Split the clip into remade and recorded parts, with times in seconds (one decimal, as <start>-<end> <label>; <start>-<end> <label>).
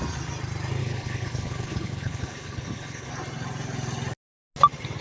0.0-0.8 recorded; 0.8-3.1 remade; 3.1-5.0 recorded